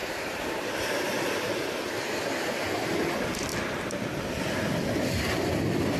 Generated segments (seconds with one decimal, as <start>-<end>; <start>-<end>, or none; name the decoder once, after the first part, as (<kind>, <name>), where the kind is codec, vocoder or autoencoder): 0.0-0.8 (vocoder, BigVGAN v2); 3.5-4.7